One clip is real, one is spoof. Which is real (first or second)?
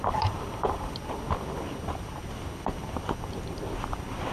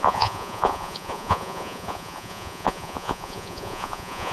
first